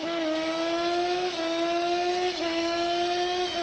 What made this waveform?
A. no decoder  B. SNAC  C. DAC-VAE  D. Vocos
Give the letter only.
C